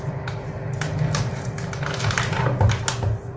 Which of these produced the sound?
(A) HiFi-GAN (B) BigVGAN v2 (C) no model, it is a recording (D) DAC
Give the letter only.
C